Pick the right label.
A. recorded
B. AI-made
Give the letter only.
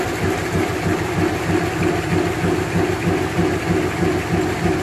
A